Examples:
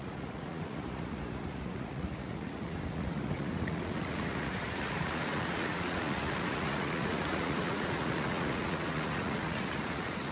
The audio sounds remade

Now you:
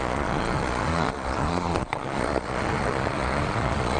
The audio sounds remade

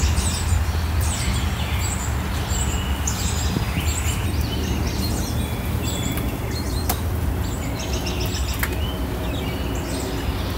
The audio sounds recorded